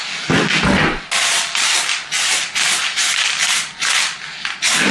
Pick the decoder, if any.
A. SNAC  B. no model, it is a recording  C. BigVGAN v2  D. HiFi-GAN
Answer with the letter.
B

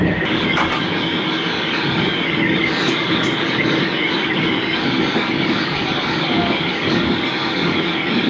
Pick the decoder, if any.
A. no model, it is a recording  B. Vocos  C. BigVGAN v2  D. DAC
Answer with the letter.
D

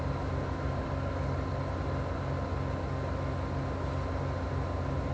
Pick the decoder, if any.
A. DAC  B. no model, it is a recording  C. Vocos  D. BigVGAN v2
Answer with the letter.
B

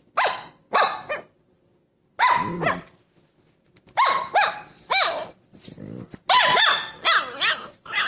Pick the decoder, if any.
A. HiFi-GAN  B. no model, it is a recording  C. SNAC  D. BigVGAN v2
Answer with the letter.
B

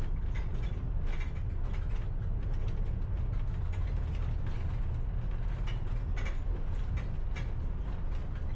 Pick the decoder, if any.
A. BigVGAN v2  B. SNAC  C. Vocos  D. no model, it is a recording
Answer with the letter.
D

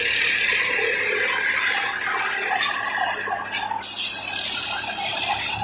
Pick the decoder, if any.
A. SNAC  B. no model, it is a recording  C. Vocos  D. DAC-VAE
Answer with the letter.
B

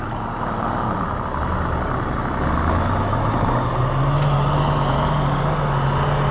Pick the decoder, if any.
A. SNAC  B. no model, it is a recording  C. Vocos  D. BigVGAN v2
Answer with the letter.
B